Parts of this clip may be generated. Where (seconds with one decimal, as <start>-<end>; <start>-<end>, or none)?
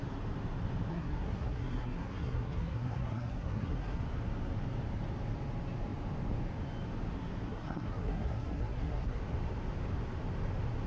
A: 0.9-4.0; 7.5-9.2